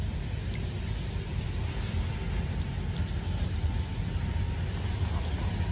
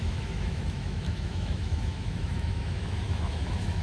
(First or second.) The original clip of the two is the first